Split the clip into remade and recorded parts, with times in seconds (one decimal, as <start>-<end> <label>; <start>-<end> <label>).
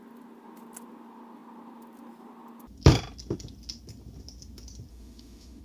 0.0-4.9 recorded; 4.9-5.6 remade